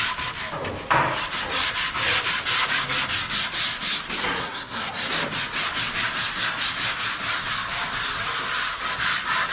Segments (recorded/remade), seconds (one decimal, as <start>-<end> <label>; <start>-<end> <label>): 0.0-4.2 recorded; 4.2-5.1 remade; 5.1-9.5 recorded